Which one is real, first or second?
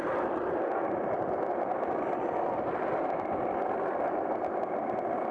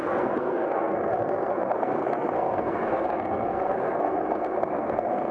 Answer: first